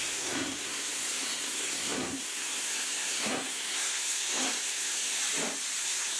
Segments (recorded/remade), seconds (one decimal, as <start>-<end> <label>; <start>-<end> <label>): 0.0-5.2 remade; 5.2-5.8 recorded; 5.8-6.2 remade